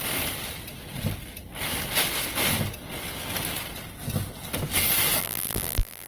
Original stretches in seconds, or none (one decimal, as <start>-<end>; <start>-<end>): 0.0-5.2